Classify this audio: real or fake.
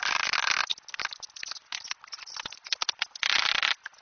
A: real